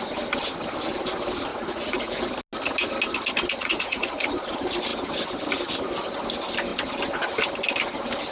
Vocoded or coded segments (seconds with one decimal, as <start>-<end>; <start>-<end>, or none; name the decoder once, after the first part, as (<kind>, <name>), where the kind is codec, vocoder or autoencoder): 1.5-2.2 (vocoder, Vocos); 3.6-4.3